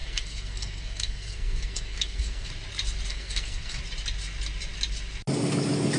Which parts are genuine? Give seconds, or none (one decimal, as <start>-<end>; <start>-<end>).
2.5-3.1; 3.8-6.0

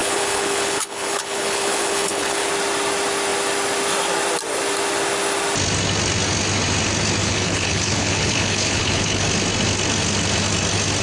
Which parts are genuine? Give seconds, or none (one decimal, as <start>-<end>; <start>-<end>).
2.5-7.2; 9.2-11.0

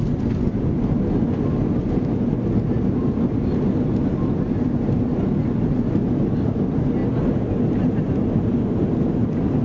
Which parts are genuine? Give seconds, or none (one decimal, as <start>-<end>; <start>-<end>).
0.0-9.6